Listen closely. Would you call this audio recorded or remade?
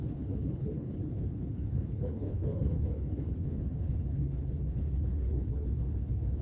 remade